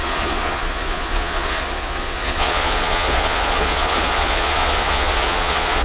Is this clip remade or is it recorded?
remade